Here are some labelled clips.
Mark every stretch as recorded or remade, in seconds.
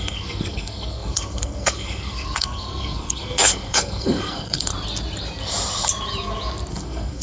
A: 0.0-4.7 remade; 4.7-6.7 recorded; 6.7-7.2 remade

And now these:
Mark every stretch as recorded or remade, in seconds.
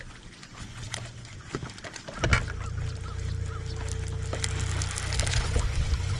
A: 0.0-1.6 remade; 1.6-5.3 recorded; 5.3-6.2 remade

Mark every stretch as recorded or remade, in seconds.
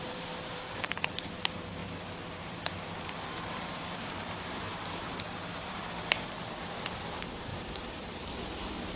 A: 0.0-1.8 remade; 1.8-2.4 recorded; 2.4-7.5 remade; 7.5-9.0 recorded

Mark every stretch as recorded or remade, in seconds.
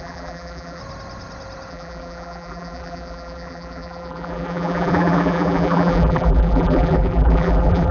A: 0.0-0.8 remade; 0.8-1.7 recorded; 1.7-7.9 remade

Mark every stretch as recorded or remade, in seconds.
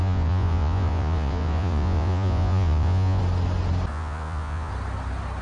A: 0.0-3.2 remade; 3.2-3.9 recorded; 3.9-4.7 remade; 4.7-5.4 recorded